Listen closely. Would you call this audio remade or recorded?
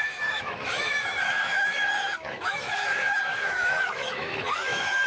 remade